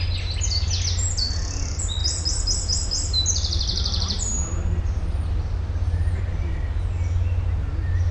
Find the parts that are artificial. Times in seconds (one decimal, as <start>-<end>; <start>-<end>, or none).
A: 2.0-6.2